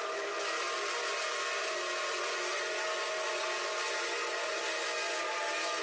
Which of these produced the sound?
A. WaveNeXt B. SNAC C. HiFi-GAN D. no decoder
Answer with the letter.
D